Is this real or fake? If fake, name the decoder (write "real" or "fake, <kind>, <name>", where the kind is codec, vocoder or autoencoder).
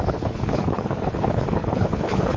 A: fake, codec, HILCodec